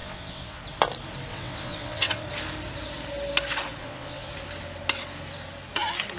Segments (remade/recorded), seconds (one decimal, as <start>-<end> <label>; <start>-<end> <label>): 0.0-0.6 remade; 0.6-1.3 recorded; 1.3-2.2 remade; 2.2-3.8 recorded; 3.8-4.3 remade; 4.3-6.2 recorded